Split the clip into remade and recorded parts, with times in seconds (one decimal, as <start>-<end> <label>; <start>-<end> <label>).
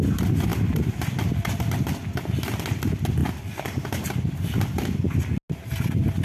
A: 0.0-0.5 recorded; 0.5-1.1 remade; 1.1-3.2 recorded; 3.2-4.1 remade; 4.1-6.2 recorded